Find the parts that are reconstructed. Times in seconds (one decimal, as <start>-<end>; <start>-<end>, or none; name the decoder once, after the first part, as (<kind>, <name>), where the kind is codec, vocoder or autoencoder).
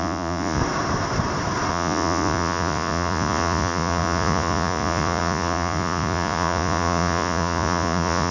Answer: 0.0-0.6 (vocoder, Vocos); 1.7-8.3